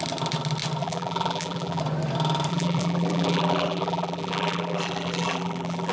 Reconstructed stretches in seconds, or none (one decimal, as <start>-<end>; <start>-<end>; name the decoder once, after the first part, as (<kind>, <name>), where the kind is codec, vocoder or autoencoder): 0.8-1.8 (vocoder, BigVGAN v2); 2.5-5.9